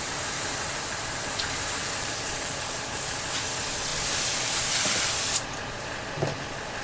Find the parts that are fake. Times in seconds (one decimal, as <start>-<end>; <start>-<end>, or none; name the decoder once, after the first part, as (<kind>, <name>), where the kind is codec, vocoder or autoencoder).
1.8-3.1 (vocoder, BigVGAN v2)